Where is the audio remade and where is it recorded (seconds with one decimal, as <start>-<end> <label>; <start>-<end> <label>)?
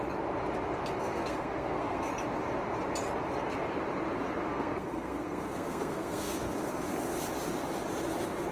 0.0-1.0 recorded; 1.0-2.1 remade; 2.1-4.4 recorded; 4.4-6.3 remade; 6.3-8.5 recorded